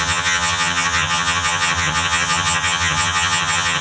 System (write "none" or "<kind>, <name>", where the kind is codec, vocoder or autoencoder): vocoder, HiFi-GAN